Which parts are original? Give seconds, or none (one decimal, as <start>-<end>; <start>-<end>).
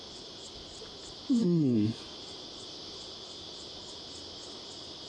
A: 0.0-1.4; 2.0-5.1